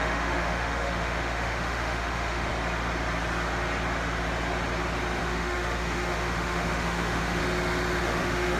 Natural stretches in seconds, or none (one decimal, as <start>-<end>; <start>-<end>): 2.5-5.2; 7.4-8.0